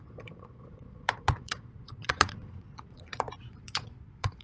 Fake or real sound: fake